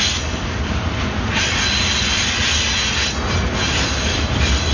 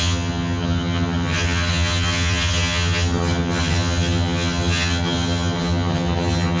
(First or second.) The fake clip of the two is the second